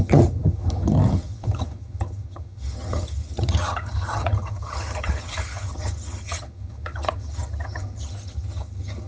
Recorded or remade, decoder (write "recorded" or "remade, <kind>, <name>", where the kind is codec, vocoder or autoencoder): remade, vocoder, HiFi-GAN